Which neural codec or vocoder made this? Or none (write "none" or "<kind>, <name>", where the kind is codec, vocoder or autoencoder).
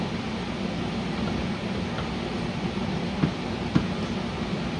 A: none